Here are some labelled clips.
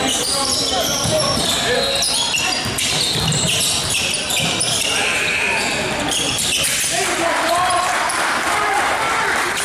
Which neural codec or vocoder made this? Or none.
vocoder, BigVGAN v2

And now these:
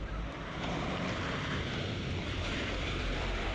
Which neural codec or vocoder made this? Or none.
vocoder, BigVGAN v2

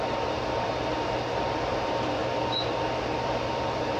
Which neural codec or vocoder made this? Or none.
vocoder, BigVGAN v2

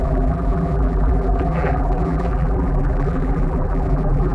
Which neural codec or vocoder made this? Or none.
vocoder, BigVGAN v2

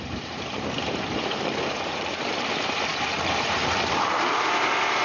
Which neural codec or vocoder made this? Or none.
vocoder, BigVGAN v2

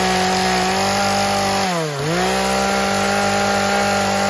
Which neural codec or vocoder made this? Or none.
none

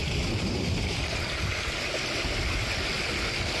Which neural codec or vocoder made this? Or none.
none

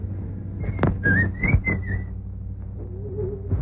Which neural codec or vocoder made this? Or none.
none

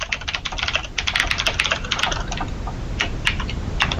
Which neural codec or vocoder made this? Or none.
none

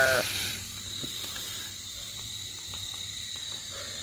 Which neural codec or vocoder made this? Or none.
vocoder, BigVGAN v2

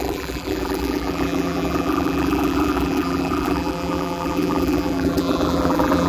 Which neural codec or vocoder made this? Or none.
vocoder, BigVGAN v2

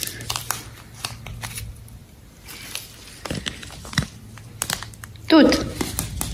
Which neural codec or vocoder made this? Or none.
none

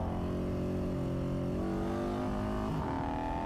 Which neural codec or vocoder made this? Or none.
none